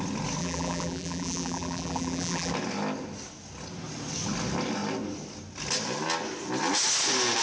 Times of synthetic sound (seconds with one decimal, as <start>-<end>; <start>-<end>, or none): 0.4-2.5